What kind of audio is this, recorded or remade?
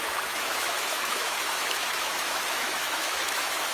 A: remade